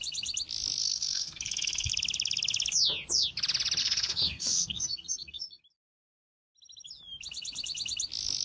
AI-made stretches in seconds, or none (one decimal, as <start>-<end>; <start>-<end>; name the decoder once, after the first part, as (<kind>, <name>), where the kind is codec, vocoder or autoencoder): 0.8-1.9 (codec, SNAC); 3.8-5.6